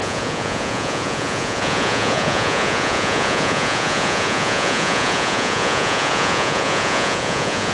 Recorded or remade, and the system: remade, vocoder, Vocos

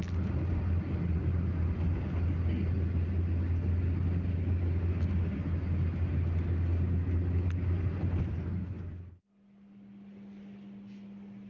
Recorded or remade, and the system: recorded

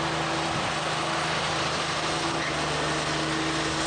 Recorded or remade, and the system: recorded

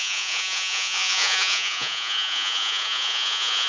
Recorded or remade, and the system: remade, vocoder, Vocos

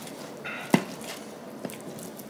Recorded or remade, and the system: recorded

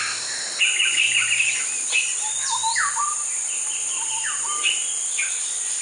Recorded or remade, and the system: recorded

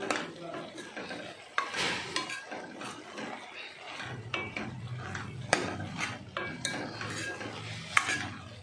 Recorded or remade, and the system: recorded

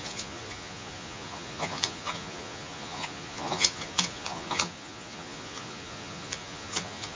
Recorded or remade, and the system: remade, vocoder, Vocos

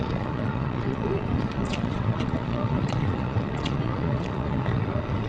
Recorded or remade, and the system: remade, vocoder, Vocos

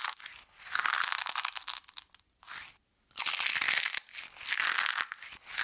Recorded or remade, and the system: recorded